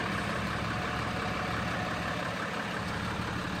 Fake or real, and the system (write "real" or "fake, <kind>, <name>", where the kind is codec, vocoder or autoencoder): real